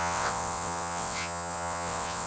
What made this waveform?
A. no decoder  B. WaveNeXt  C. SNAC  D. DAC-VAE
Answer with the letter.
B